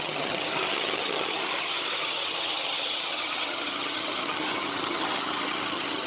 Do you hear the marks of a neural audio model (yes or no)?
yes